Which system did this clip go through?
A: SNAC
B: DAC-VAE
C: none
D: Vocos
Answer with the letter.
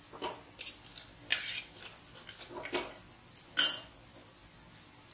C